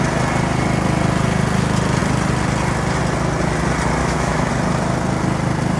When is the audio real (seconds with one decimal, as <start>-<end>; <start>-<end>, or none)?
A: 0.0-4.0; 4.5-5.8